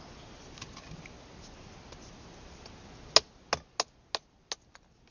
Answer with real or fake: real